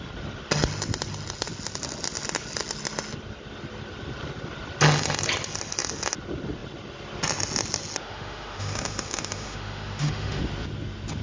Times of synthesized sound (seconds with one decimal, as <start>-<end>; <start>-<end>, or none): 8.0-10.4